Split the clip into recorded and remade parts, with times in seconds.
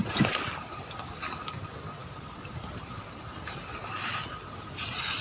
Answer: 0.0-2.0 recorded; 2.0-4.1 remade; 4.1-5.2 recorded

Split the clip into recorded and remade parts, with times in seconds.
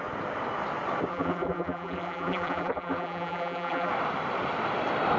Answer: 0.0-1.1 recorded; 1.1-3.9 remade; 3.9-5.2 recorded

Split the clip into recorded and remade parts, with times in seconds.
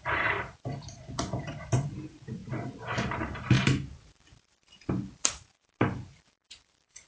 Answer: 0.0-7.1 remade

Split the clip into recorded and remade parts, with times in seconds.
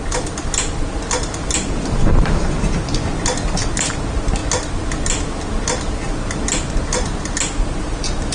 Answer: 0.0-8.3 recorded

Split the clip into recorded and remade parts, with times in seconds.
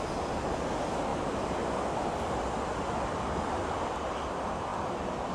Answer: 0.0-5.3 recorded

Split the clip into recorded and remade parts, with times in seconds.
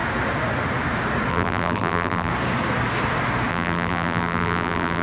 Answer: 0.0-1.3 recorded; 1.3-2.3 remade; 2.3-3.5 recorded; 3.5-5.0 remade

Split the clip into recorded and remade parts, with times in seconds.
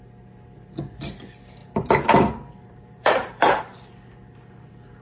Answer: 0.0-1.6 recorded; 1.6-3.6 remade; 3.6-5.0 recorded